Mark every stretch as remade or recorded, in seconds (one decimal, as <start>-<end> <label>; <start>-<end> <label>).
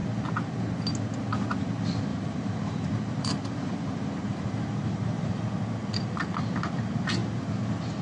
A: 0.0-2.1 recorded; 2.1-5.3 remade; 5.3-7.2 recorded; 7.2-8.0 remade